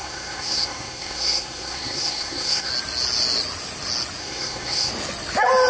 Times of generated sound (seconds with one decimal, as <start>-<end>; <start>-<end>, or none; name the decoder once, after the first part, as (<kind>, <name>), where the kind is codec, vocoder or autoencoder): 0.0-2.7 (codec, SNAC); 4.2-4.9